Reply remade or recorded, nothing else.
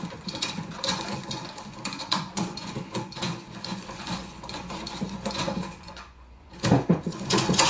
remade